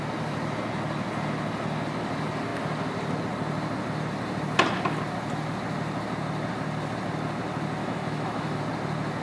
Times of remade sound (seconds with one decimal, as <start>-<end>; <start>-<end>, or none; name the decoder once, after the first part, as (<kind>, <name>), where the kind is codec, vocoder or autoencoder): 7.8-8.6 (autoencoder, DAC-VAE)